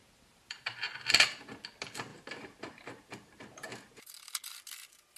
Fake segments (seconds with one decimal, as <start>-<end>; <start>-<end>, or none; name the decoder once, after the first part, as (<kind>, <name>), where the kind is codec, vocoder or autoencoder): 0.0-0.8 (vocoder, BigVGAN v2); 2.1-4.1